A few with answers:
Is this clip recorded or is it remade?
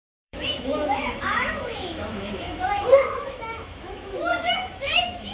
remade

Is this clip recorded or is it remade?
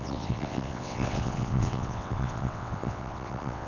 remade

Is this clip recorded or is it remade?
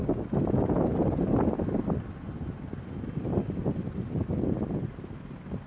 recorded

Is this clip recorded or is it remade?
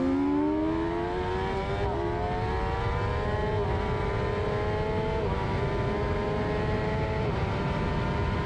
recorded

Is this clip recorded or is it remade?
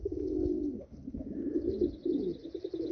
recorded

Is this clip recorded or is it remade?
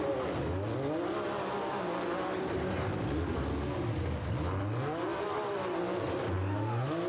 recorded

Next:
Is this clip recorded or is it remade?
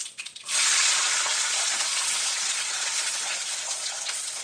remade